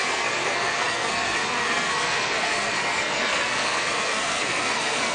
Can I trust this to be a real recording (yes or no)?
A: no